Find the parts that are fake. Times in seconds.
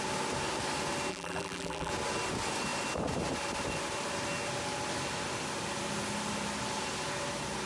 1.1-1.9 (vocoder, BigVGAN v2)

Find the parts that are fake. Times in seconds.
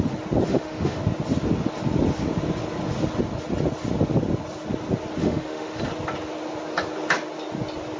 0.5-1.0 (autoencoder, DAC-VAE); 5.2-5.8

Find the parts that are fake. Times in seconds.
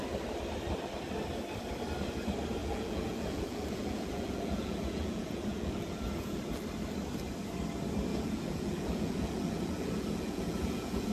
2.6-6.4 (vocoder, Vocos); 8.1-11.1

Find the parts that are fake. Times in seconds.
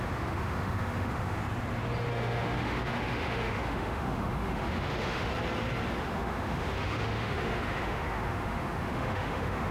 0.0-1.4 (autoencoder, DAC-VAE); 2.1-5.3; 6.0-9.7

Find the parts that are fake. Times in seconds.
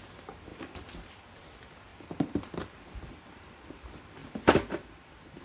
1.9-3.5 (vocoder, BigVGAN v2); 4.2-5.4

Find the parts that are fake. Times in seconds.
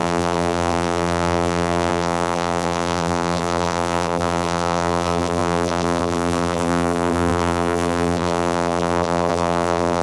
0.0-10.0 (vocoder, BigVGAN v2)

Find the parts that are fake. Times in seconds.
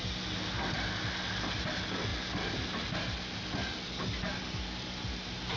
none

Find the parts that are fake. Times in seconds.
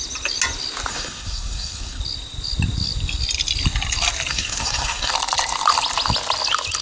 0.9-2.0 (codec, SNAC); 4.3-5.1